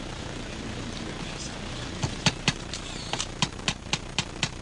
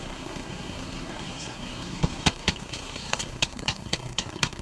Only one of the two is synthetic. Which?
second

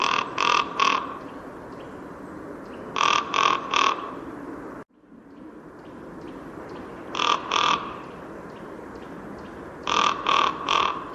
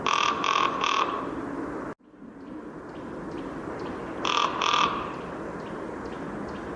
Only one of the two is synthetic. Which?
first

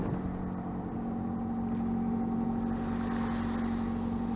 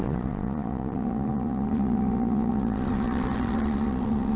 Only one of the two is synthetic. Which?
second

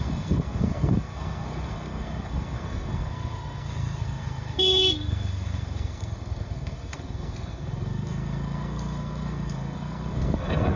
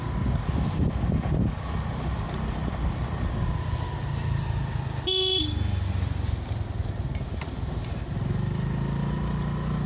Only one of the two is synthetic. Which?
first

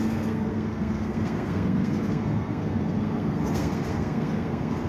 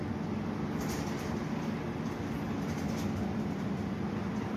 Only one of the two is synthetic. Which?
first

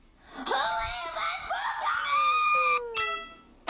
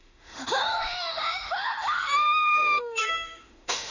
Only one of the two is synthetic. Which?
second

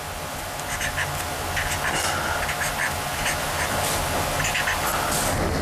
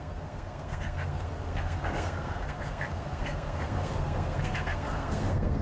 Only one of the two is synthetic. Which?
second